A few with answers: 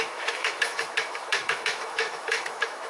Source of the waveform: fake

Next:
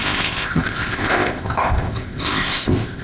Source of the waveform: fake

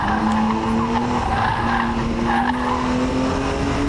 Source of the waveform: real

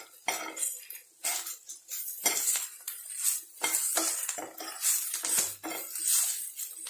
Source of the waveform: real